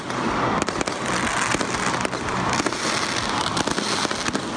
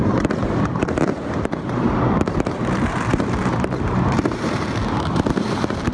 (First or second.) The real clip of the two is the first